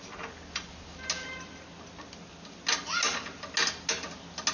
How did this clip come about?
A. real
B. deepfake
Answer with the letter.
A